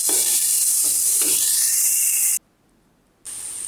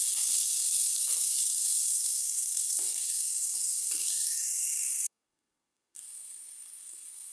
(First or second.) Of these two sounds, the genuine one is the first